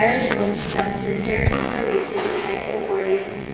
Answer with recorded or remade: remade